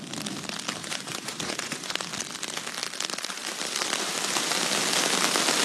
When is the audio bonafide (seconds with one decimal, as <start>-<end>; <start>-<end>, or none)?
0.0-0.8; 2.1-5.6